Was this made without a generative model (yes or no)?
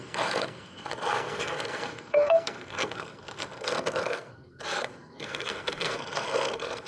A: no